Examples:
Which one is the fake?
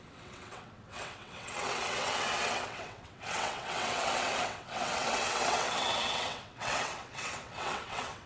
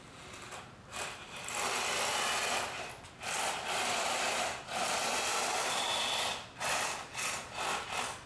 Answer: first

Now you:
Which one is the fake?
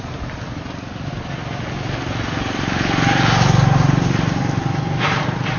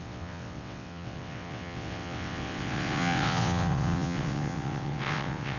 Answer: second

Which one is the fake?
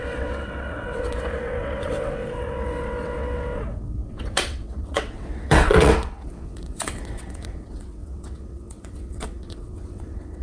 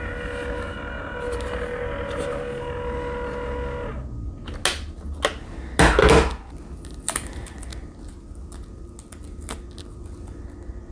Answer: first